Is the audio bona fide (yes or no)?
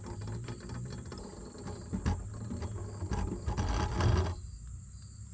yes